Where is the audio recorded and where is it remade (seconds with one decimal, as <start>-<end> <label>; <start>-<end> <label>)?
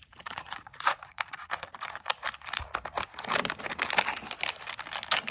0.0-2.1 remade; 2.1-5.3 recorded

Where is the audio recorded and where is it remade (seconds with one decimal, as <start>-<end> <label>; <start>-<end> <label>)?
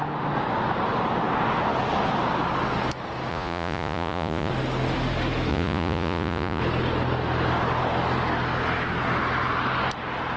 0.0-3.3 recorded; 3.3-4.5 remade; 4.5-5.5 recorded; 5.5-6.6 remade; 6.6-10.4 recorded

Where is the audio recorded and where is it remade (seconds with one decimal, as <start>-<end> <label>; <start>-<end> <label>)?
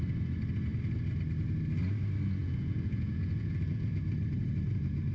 0.0-2.4 recorded; 2.4-4.0 remade; 4.0-5.1 recorded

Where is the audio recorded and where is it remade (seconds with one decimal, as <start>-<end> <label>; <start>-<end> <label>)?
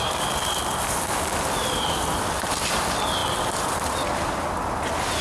0.0-5.2 recorded